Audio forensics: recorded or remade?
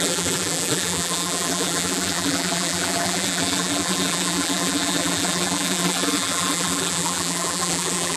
remade